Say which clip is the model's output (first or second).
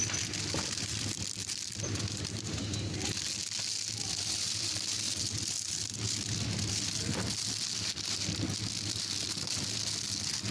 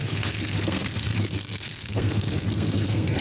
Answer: second